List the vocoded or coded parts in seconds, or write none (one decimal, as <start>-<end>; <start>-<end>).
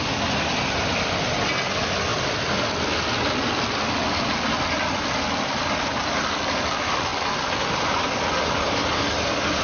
none